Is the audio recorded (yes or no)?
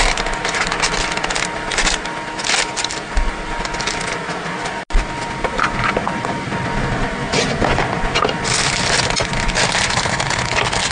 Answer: yes